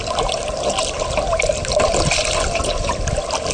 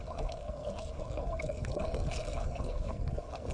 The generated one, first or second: second